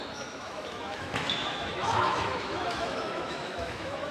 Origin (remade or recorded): remade